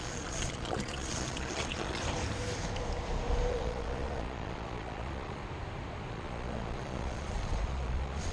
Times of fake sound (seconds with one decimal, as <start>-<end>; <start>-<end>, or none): 0.0-2.0; 3.5-5.4; 6.1-8.3